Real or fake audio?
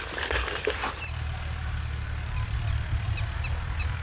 real